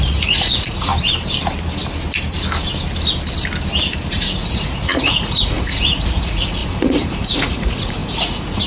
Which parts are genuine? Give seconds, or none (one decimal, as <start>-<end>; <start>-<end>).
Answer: 0.9-4.1